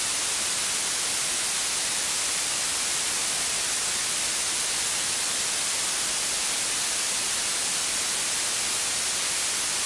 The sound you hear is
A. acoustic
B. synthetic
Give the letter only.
A